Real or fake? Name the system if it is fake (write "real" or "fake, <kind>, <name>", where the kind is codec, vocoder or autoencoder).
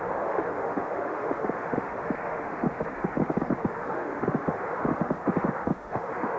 fake, autoencoder, DAC-VAE